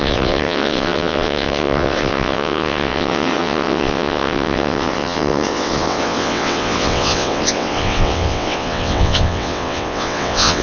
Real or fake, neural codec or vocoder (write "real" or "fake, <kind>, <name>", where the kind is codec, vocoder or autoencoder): fake, vocoder, WaveNeXt